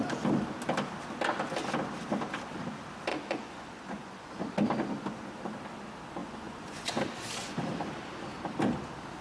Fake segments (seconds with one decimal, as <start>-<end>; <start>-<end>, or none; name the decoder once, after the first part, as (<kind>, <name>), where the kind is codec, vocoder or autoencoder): 3.1-4.3 (vocoder, Vocos); 6.2-6.9